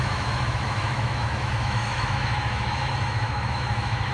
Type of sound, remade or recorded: remade